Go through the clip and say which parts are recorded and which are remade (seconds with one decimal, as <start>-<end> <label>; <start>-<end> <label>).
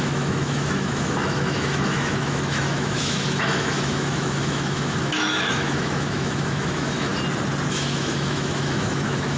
0.0-7.1 remade; 7.1-7.7 recorded; 7.7-9.4 remade